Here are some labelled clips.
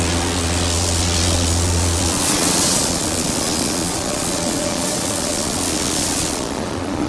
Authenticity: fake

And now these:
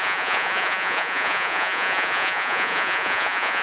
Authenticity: fake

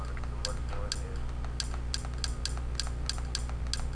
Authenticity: real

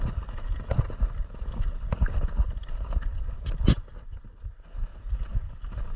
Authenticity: real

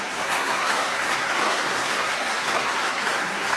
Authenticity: fake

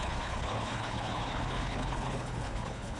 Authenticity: fake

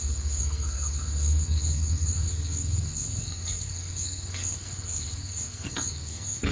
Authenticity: fake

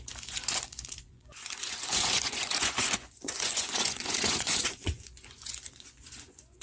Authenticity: fake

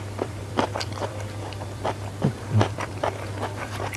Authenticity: fake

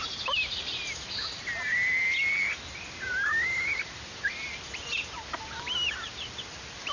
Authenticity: real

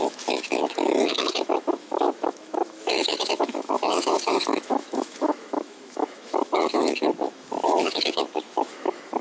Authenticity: fake